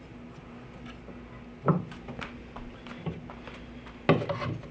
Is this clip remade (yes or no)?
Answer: no